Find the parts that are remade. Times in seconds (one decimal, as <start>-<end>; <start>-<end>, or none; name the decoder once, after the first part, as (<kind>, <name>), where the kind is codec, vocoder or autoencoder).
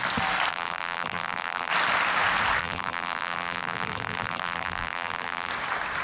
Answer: 0.5-1.7 (vocoder, BigVGAN v2); 2.6-5.5